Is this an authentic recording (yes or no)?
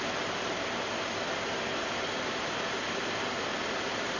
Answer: yes